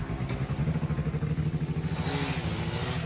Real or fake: real